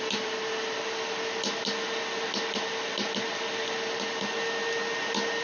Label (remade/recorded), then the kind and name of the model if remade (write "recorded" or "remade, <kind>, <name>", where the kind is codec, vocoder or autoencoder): recorded